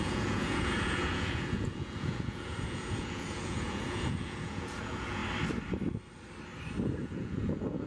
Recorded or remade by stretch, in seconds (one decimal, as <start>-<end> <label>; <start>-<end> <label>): 0.0-5.2 remade; 5.2-7.0 recorded; 7.0-7.9 remade